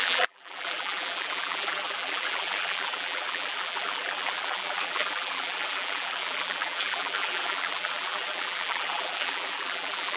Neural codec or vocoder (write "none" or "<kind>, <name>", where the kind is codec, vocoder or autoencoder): vocoder, BigVGAN v2